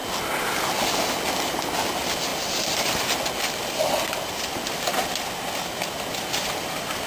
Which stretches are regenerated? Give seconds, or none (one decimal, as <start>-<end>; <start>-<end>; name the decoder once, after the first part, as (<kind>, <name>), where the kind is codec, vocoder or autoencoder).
none